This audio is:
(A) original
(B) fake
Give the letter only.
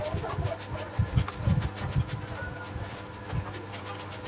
A